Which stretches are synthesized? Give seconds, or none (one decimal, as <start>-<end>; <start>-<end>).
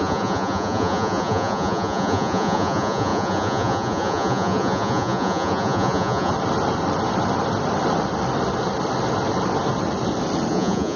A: 0.0-6.3; 10.5-11.0